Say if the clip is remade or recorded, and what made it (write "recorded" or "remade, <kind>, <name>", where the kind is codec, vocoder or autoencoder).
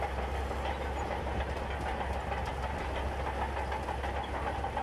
recorded